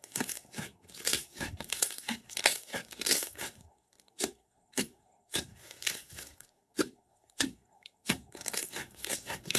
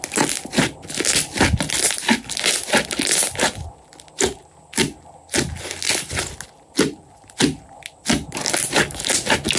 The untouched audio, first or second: second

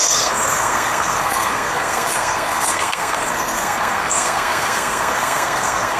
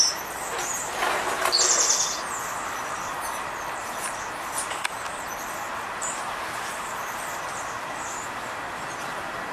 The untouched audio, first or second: second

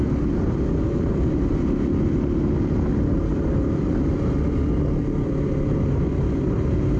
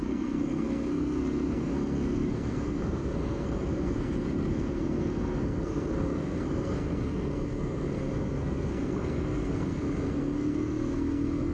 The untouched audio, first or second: first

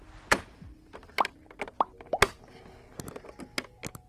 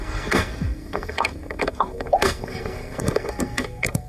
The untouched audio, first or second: first